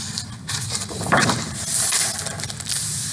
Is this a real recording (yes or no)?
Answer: yes